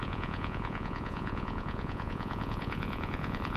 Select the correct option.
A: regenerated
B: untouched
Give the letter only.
A